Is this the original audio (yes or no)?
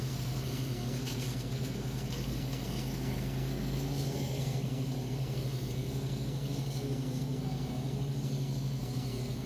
no